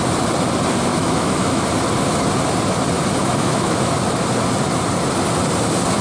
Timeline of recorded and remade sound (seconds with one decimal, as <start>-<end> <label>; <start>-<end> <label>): 0.0-0.9 recorded; 0.9-1.6 remade; 1.6-3.2 recorded; 3.2-3.9 remade; 3.9-6.0 recorded